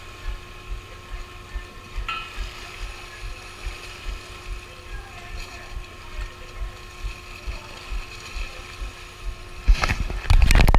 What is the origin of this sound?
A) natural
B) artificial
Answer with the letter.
A